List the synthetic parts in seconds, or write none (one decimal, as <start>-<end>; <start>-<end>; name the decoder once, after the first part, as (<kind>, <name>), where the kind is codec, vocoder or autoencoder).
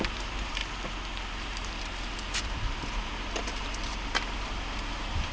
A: 0.0-0.6 (vocoder, BigVGAN v2); 1.3-5.3